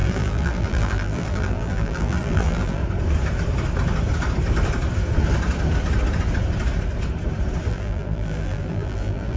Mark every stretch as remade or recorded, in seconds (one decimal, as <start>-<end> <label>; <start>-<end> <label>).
0.0-2.8 remade; 2.8-7.7 recorded; 7.7-9.4 remade